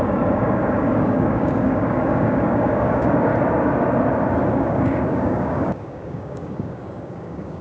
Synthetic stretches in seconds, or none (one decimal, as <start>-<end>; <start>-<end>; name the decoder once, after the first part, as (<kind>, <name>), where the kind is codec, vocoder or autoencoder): 0.0-3.3 (codec, DAC); 4.5-7.6